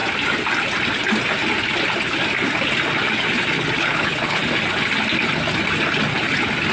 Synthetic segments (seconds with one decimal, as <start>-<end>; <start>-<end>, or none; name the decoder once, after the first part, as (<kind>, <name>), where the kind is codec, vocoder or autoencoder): 3.8-4.4 (codec, HILCodec)